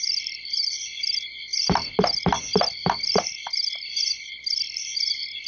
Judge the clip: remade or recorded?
recorded